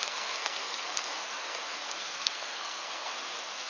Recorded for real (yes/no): no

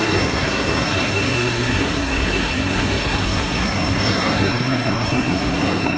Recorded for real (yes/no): no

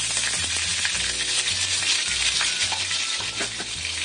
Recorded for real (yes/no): yes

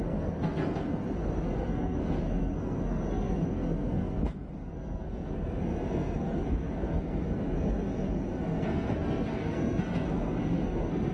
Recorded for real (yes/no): no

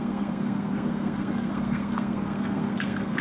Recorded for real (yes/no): no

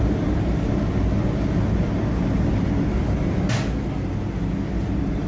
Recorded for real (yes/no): yes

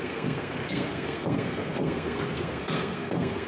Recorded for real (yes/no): no